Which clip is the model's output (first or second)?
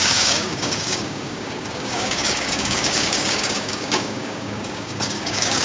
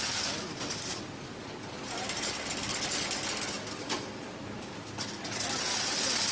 first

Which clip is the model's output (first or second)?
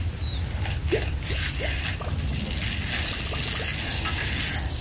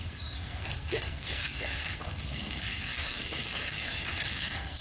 second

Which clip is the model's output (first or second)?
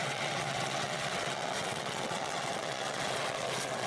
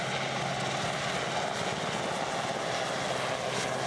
first